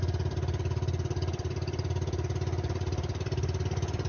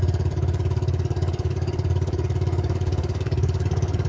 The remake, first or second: second